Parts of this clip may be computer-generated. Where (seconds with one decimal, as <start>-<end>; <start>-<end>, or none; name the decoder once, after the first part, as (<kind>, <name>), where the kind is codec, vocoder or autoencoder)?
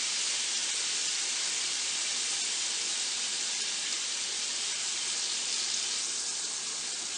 0.6-4.0 (vocoder, BigVGAN v2)